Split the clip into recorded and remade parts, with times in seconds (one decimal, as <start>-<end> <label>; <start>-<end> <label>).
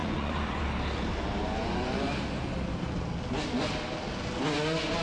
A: 0.0-0.6 remade; 0.6-1.4 recorded; 1.4-2.1 remade; 2.1-5.0 recorded